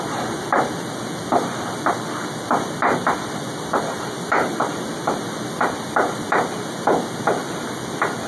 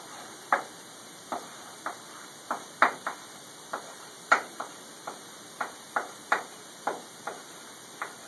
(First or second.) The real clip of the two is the first